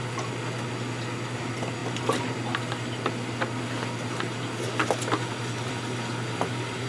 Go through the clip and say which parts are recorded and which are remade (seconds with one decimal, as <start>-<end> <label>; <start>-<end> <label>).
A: 0.0-6.9 recorded